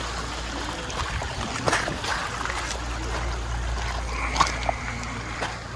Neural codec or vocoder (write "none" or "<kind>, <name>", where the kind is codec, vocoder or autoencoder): none